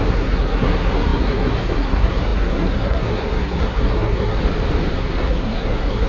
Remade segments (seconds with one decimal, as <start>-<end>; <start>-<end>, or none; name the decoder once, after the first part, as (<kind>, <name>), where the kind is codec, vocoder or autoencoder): 0.0-4.4 (codec, SNAC); 4.9-6.1

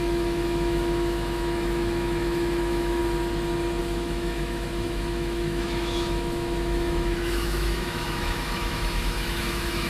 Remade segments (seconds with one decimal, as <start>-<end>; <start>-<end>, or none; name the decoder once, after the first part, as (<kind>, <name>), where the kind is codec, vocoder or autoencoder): 0.0-3.0 (autoencoder, DAC-VAE); 3.8-9.9

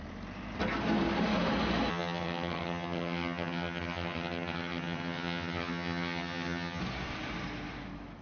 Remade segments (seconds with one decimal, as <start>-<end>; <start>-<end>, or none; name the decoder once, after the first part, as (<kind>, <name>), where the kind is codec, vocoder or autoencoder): 1.9-6.8 (vocoder, HiFi-GAN)

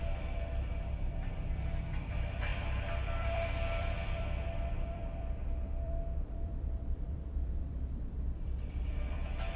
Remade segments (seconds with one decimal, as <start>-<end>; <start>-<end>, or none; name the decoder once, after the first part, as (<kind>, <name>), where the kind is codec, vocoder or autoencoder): 0.0-9.6 (vocoder, BigVGAN v2)

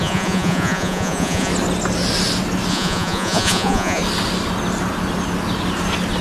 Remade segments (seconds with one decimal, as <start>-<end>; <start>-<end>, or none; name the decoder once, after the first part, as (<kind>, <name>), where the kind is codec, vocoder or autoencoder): 0.0-1.5 (vocoder, Vocos); 2.7-4.0